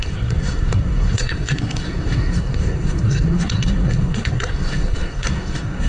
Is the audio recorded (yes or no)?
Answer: no